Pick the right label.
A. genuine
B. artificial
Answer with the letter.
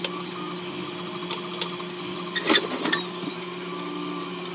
A